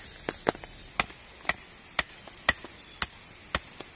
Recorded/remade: recorded